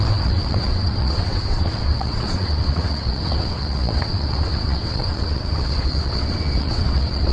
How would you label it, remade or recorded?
remade